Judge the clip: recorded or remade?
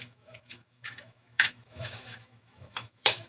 remade